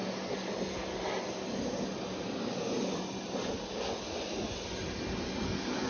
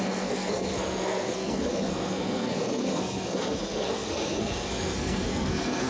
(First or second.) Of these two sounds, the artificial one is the second